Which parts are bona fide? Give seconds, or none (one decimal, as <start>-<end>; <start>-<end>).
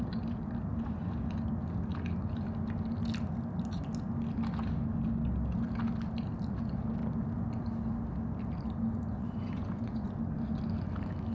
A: 0.0-9.1; 10.1-11.3